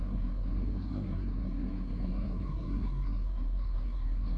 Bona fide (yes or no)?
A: no